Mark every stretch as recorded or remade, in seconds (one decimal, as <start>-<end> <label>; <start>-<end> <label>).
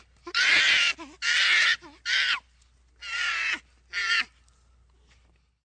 0.0-5.7 recorded